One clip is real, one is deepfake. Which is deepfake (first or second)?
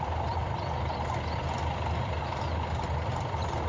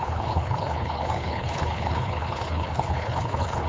second